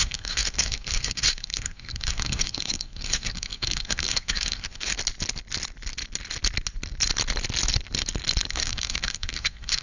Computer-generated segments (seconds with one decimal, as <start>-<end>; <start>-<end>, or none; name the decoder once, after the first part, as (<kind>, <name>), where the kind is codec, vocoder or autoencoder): 0.0-4.9 (codec, SNAC); 8.5-9.8